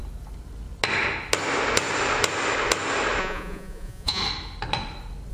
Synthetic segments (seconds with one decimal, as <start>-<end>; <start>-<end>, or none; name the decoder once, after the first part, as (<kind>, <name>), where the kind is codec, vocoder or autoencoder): 3.2-4.2 (vocoder, Vocos)